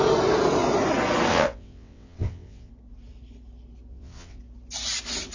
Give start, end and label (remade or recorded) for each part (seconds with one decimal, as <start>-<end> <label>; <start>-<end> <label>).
0.0-1.3 recorded; 1.3-2.7 remade; 2.7-3.9 recorded; 3.9-4.4 remade; 4.4-5.3 recorded